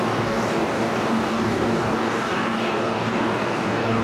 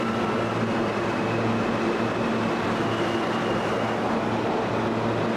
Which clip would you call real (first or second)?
second